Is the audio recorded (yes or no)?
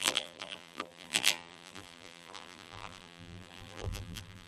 no